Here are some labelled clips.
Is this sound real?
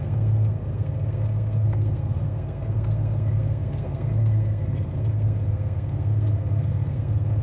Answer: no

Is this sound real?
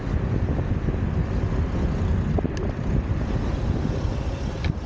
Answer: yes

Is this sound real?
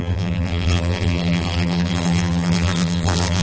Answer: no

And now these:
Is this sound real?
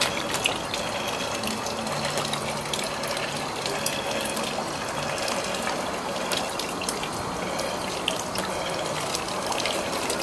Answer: yes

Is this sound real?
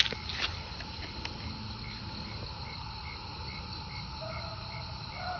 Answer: yes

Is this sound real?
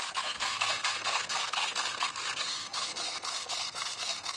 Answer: no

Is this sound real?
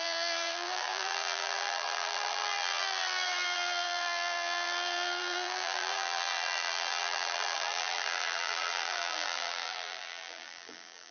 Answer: no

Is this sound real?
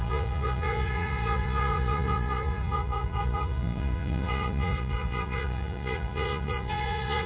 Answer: no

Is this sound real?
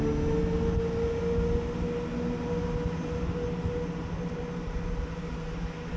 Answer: yes